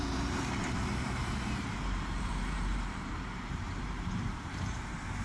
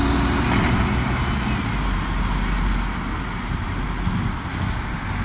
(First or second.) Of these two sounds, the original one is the second